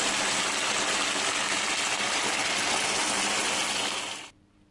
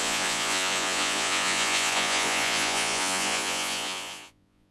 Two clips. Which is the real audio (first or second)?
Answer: first